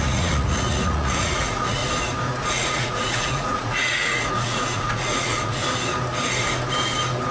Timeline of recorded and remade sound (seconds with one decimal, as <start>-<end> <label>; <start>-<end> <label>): 0.0-1.8 remade; 1.8-2.5 recorded; 2.5-5.6 remade; 5.6-7.3 recorded